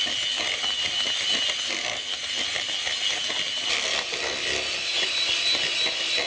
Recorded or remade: recorded